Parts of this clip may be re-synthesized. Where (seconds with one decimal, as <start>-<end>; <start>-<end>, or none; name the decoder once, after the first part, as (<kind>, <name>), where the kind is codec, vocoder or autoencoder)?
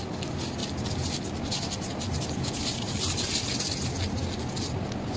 none